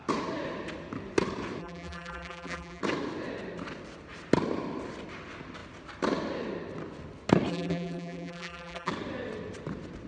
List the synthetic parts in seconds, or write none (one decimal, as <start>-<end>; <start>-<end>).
1.6-2.8; 7.5-8.9